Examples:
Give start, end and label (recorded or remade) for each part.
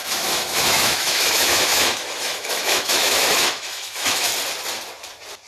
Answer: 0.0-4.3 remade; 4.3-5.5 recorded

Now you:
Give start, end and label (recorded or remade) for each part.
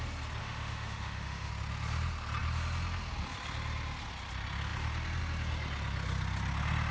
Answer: 0.0-0.4 recorded; 0.4-1.5 remade; 1.5-6.9 recorded